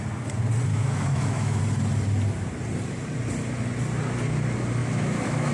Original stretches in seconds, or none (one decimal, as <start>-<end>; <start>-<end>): 0.0-0.7; 1.6-4.8